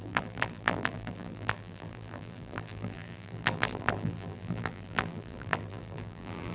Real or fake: fake